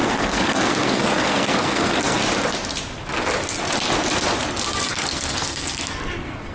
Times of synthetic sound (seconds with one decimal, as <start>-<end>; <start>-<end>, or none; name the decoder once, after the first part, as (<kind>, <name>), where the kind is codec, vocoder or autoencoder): 0.0-2.2 (codec, SNAC); 4.9-6.5